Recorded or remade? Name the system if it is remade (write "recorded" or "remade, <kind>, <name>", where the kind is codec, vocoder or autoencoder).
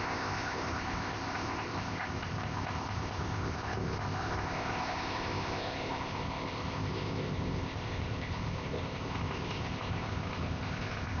remade, codec, ZipCodec